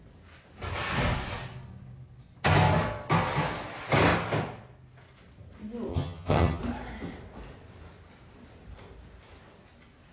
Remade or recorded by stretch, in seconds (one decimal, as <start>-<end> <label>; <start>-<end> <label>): 0.0-5.9 recorded; 5.9-6.6 remade; 6.6-10.1 recorded